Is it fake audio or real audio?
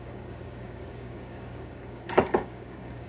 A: fake